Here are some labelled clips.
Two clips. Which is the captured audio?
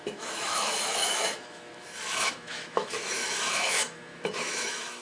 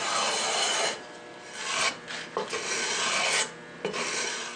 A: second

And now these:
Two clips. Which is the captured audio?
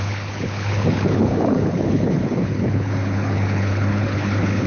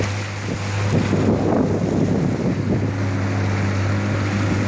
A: second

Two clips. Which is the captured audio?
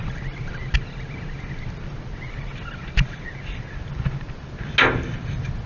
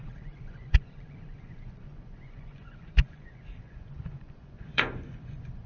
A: first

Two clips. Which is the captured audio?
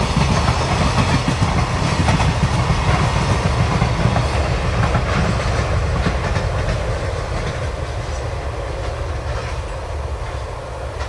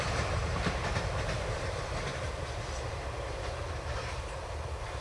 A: first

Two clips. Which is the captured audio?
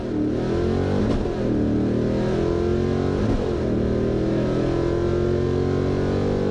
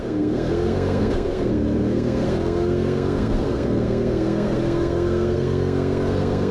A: first